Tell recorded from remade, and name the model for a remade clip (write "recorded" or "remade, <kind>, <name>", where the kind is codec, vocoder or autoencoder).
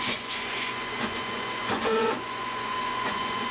remade, vocoder, Vocos